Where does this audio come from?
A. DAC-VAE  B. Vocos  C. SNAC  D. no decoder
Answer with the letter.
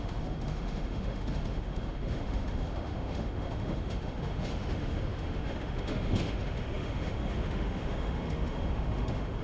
A